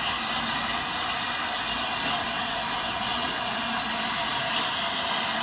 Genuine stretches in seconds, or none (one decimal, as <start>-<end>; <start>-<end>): 0.0-2.9; 3.6-5.4

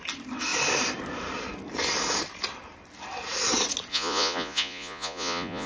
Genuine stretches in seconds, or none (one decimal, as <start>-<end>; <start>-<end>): 0.0-3.9

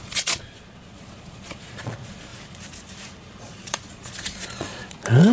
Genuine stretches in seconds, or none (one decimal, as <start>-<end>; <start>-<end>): 2.3-3.4

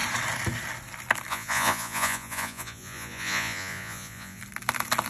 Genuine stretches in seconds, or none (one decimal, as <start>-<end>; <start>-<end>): 0.0-1.3; 4.4-5.1

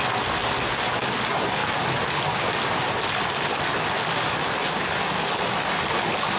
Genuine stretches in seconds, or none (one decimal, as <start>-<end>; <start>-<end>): 0.0-6.4